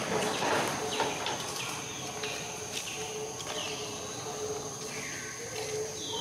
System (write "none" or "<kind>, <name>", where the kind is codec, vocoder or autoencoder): none